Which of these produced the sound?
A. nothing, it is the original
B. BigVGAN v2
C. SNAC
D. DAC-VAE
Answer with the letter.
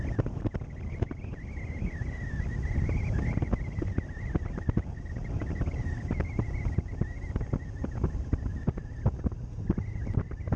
A